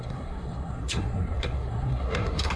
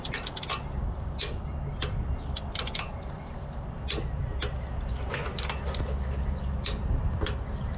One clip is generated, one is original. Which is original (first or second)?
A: second